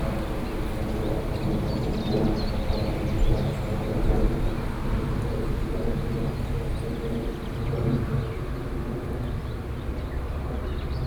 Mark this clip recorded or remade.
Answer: recorded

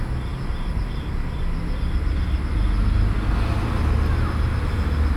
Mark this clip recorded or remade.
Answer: recorded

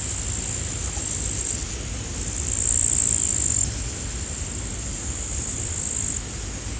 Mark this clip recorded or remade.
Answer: recorded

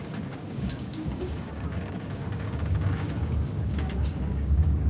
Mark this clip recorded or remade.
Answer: remade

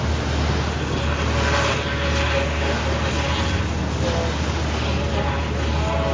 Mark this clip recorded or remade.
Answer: recorded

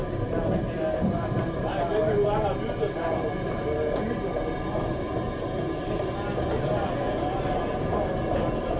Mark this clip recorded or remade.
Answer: recorded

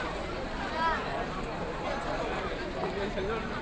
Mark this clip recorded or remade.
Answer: recorded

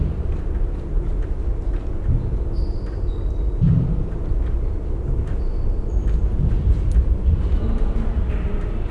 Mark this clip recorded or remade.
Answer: recorded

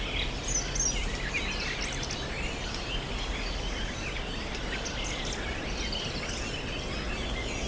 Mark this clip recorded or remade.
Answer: recorded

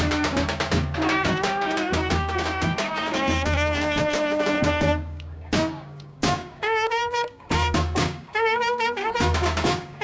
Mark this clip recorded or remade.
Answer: remade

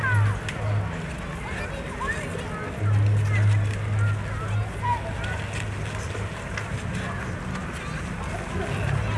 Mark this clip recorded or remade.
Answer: recorded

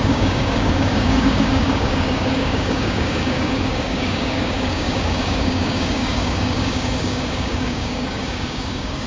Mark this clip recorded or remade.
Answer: remade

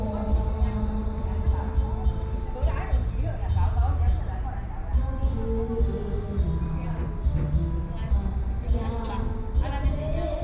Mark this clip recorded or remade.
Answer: recorded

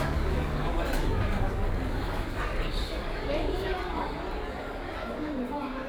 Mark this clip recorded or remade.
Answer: remade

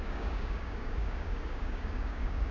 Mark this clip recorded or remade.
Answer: remade